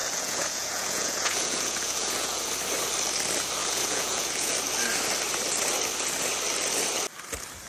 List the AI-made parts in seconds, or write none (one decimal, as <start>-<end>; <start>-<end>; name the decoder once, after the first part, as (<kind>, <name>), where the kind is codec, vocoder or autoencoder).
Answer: 0.0-2.5 (vocoder, Vocos); 3.6-4.5